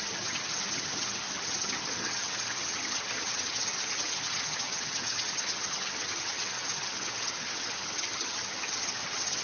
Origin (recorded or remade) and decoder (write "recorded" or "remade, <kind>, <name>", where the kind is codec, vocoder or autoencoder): remade, vocoder, HiFi-GAN